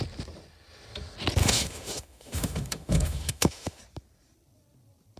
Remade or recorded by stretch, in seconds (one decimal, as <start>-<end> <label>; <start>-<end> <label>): 0.0-1.4 recorded; 1.4-3.8 remade; 3.8-5.2 recorded